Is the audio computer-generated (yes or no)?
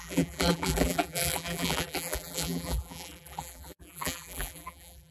yes